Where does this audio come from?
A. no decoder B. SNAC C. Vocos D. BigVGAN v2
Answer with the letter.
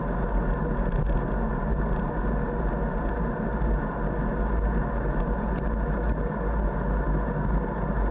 A